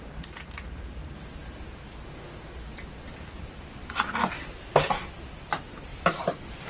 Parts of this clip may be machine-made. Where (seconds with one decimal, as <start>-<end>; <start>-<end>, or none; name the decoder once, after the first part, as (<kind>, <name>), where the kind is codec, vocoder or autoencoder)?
5.9-6.7 (vocoder, BigVGAN v2)

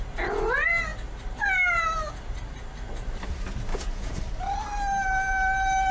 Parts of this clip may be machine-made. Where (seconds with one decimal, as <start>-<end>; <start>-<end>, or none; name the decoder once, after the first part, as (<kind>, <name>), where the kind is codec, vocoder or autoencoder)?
3.7-4.2 (vocoder, Vocos)